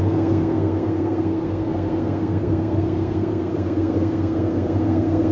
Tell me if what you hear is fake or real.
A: fake